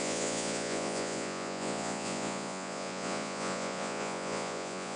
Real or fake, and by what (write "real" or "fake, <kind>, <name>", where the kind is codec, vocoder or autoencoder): fake, vocoder, Vocos